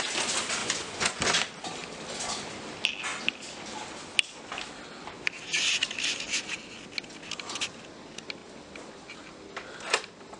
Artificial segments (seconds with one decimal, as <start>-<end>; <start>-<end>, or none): 0.6-1.2

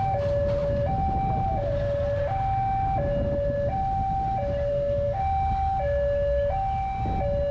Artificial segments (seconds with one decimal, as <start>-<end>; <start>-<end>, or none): 4.7-5.2

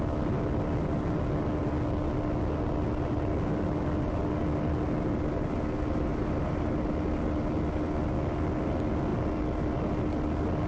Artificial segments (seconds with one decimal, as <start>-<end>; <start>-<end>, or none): 6.1-6.7

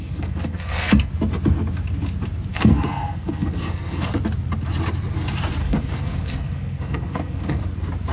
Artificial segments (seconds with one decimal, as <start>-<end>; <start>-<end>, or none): 0.0-1.1; 2.5-4.1; 5.6-7.6

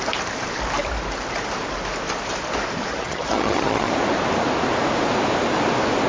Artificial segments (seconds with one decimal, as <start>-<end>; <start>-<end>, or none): 2.9-3.9

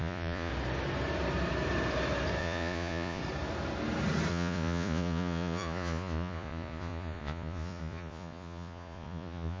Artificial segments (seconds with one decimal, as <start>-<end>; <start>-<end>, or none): 0.0-0.5; 2.4-3.2; 4.3-9.6

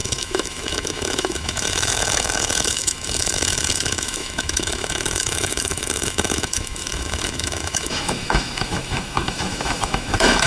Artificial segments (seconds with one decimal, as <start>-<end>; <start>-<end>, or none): 0.0-10.5